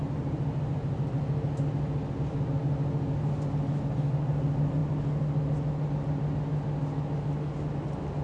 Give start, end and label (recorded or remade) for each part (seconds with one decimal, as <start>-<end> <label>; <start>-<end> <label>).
0.0-8.2 recorded